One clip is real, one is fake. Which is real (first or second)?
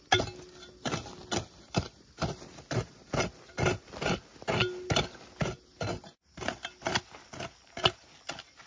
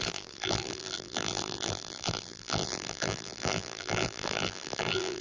first